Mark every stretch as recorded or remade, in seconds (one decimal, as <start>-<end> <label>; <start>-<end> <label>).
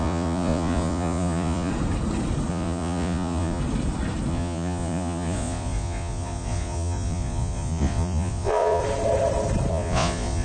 0.0-1.7 remade; 1.7-2.5 recorded; 2.5-3.6 remade; 3.6-4.3 recorded; 4.3-8.8 remade; 8.8-9.7 recorded; 9.7-10.4 remade